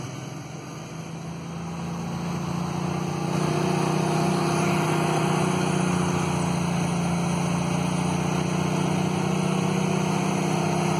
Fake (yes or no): no